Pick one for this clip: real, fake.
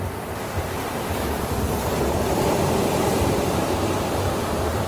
fake